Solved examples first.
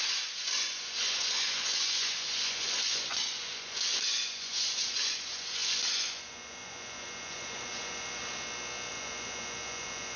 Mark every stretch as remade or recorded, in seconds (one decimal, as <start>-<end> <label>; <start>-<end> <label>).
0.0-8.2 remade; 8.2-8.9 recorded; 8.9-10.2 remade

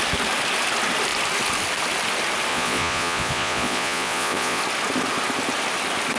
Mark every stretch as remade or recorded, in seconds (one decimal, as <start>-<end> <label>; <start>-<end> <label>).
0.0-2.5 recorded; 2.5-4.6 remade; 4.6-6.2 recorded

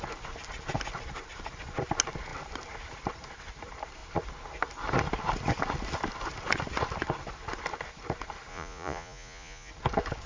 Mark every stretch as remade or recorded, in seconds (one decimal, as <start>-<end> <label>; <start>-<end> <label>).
0.0-8.5 recorded; 8.5-9.7 remade; 9.7-10.3 recorded

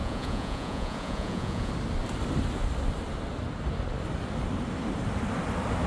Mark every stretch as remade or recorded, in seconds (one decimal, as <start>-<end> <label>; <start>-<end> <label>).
0.0-1.7 remade; 1.7-5.9 recorded